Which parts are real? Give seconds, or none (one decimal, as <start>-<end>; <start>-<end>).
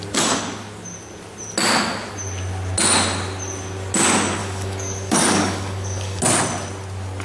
0.0-4.4; 6.2-7.2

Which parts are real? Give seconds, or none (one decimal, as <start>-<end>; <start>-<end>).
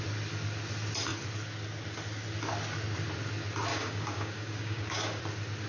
0.0-3.7; 5.2-5.7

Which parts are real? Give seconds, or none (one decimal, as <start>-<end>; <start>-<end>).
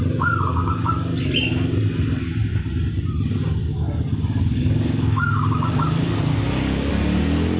0.0-0.5; 1.1-3.6; 6.9-7.6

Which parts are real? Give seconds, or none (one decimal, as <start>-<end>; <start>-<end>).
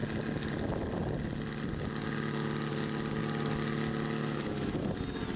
0.0-4.2; 4.8-5.4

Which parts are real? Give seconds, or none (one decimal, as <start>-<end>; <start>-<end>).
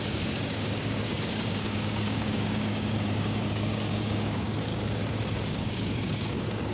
4.7-5.5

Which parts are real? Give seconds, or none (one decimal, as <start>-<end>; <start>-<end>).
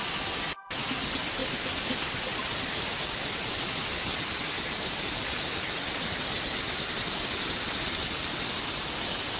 0.0-9.4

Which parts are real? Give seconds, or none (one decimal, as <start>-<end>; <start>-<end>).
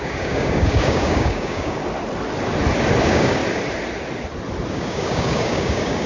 1.8-3.0; 3.4-4.7